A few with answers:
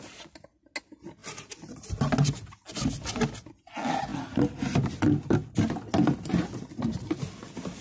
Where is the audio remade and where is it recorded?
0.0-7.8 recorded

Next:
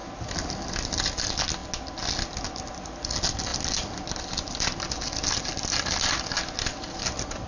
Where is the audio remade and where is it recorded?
0.0-7.5 recorded

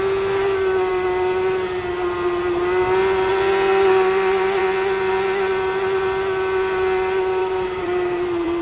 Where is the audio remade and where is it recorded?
0.0-3.7 recorded; 3.7-4.6 remade; 4.6-7.4 recorded; 7.4-8.6 remade

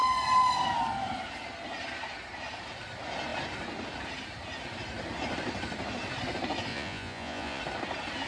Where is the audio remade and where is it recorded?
0.0-6.7 recorded; 6.7-7.6 remade; 7.6-8.3 recorded

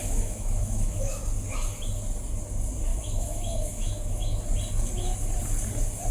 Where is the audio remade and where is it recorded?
0.0-1.2 remade; 1.2-2.9 recorded; 2.9-4.4 remade; 4.4-6.1 recorded

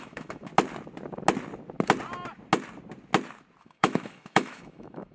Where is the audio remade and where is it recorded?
0.0-0.5 remade; 0.5-3.6 recorded; 3.6-5.1 remade